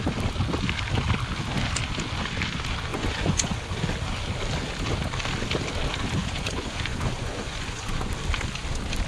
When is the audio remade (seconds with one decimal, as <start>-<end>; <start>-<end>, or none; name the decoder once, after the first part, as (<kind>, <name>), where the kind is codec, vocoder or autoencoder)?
2.9-3.5 (vocoder, Vocos); 6.2-8.1